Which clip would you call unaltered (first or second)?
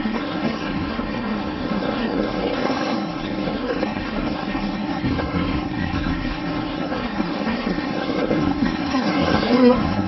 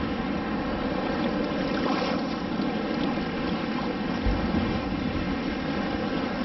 second